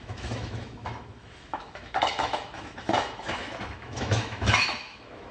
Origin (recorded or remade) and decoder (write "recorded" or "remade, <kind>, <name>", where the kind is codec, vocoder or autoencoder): remade, autoencoder, DAC-VAE